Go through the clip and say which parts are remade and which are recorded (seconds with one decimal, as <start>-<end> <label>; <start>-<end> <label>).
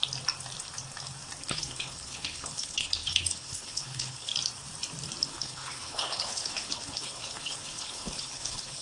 0.0-1.5 recorded; 1.5-4.3 remade; 4.3-5.3 recorded; 5.3-8.8 remade